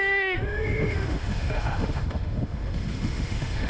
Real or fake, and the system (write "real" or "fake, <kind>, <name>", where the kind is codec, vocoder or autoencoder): fake, autoencoder, DAC-VAE